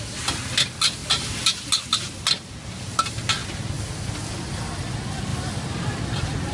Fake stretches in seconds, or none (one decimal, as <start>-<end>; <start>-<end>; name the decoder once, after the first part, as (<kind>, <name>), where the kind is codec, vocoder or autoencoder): 5.3-6.0 (vocoder, BigVGAN v2)

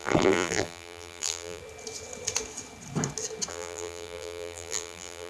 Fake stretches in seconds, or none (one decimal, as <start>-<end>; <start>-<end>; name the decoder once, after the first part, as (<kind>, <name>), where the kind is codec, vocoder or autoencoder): 0.0-1.6 (vocoder, BigVGAN v2); 3.5-5.3

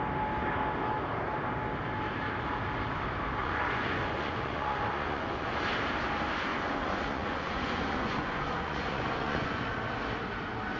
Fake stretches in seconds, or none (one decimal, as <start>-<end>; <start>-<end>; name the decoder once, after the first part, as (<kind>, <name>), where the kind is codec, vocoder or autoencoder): 3.4-5.6 (vocoder, Vocos); 6.5-9.6

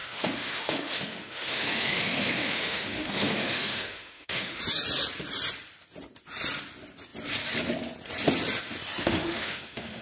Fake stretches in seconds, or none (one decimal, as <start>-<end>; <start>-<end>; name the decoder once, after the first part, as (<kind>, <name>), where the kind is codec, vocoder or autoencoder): 0.0-4.6 (autoencoder, DAC-VAE); 9.0-10.0

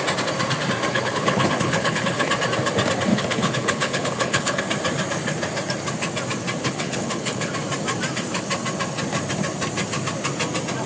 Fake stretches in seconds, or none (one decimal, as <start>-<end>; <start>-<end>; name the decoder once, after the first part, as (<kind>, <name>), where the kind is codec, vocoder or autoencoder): 0.9-2.3 (codec, HILCodec); 3.1-4.6; 6.6-7.5